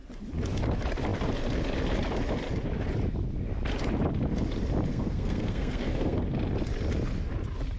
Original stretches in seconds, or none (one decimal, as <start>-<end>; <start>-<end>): 0.0-4.9; 6.2-7.8